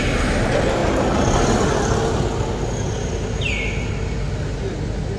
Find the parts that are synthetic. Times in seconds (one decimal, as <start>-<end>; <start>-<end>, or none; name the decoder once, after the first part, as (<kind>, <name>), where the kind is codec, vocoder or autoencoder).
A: none